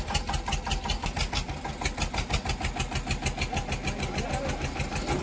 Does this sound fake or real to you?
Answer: real